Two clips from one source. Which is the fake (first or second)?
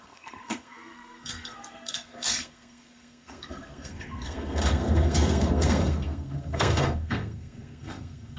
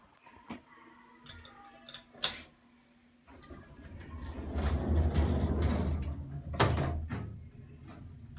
first